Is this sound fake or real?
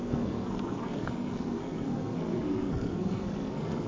fake